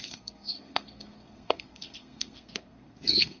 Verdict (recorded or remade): remade